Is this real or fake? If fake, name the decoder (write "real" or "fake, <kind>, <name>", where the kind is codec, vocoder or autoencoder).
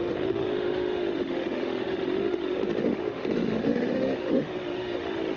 fake, autoencoder, DAC-VAE